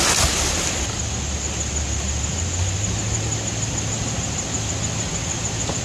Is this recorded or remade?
recorded